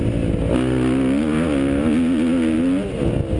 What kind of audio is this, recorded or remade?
recorded